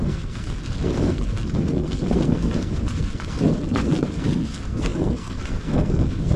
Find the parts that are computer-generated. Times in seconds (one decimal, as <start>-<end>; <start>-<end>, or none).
0.0-6.4